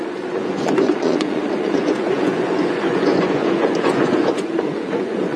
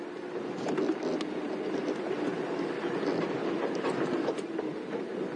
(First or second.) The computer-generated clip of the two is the first